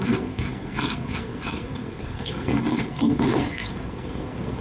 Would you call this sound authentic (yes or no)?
no